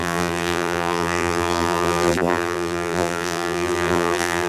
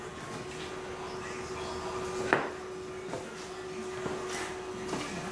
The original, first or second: second